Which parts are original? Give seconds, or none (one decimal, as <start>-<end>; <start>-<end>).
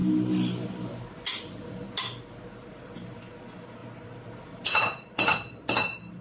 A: 0.0-6.2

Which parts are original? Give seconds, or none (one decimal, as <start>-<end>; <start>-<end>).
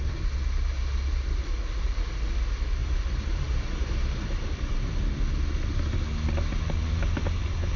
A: 0.0-2.8; 5.0-7.8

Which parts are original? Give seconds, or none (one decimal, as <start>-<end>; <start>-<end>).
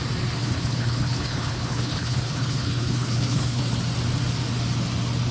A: 0.0-0.4; 3.6-5.3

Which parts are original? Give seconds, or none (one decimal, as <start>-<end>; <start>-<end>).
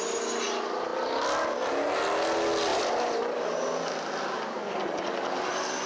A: 0.0-5.9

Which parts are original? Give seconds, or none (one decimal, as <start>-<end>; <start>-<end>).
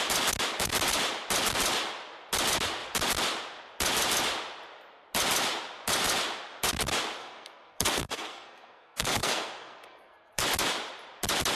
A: 0.0-7.2; 10.4-11.6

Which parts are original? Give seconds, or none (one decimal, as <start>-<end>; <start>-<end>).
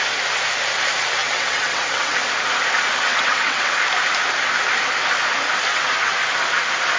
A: 0.0-1.2; 2.2-3.1; 3.7-5.7; 6.2-7.0